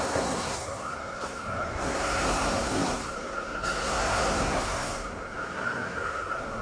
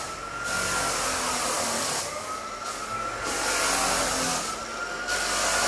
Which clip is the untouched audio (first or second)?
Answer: second